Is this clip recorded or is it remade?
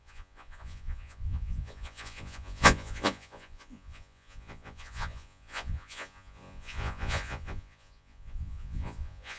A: remade